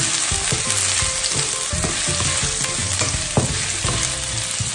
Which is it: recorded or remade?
recorded